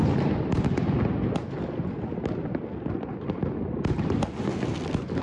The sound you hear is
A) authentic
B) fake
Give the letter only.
A